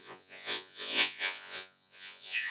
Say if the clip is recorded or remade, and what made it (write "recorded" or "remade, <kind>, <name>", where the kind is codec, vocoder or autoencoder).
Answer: remade, vocoder, Vocos